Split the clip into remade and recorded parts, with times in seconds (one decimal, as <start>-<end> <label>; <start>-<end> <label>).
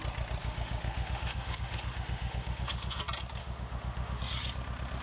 0.0-0.4 recorded; 0.4-3.0 remade; 3.0-3.4 recorded; 3.4-4.2 remade; 4.2-5.0 recorded